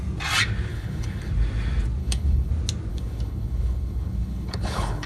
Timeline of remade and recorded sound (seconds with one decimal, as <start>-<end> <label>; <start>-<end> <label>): 0.0-0.7 recorded; 0.7-1.3 remade; 1.3-2.0 recorded; 2.0-2.5 remade; 2.5-2.9 recorded; 2.9-5.1 remade